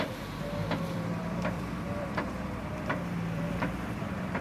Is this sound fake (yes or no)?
yes